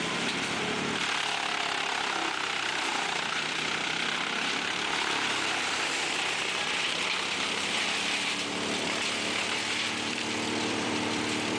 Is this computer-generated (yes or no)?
yes